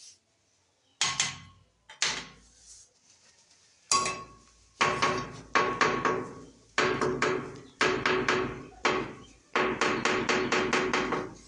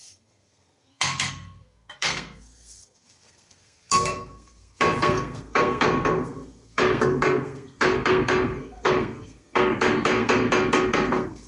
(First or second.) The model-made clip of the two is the second